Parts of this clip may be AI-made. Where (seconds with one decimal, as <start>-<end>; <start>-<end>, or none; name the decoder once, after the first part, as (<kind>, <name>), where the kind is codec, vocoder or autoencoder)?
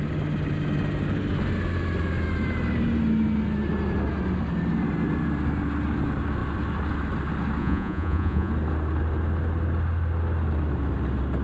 7.6-8.5 (vocoder, Vocos)